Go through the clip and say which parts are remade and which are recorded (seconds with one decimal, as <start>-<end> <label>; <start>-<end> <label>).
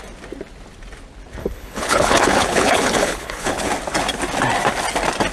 0.0-1.4 recorded; 1.4-3.7 remade; 3.7-5.3 recorded